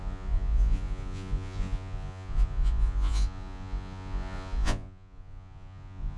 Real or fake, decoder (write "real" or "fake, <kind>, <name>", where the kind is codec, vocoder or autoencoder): fake, vocoder, Vocos